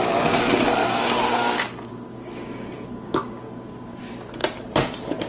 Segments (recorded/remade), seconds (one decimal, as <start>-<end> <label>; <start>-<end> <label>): 0.0-0.8 recorded; 0.8-4.0 remade; 4.0-5.3 recorded